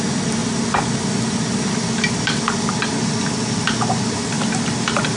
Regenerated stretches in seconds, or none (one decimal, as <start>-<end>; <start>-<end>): none